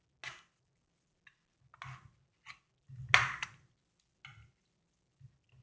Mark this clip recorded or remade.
recorded